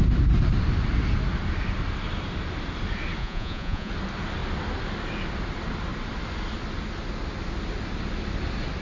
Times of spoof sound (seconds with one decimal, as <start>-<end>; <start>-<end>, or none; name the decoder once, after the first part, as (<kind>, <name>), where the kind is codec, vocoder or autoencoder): 3.2-3.9 (vocoder, Vocos)